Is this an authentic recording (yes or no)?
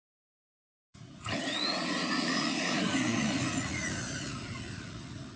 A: no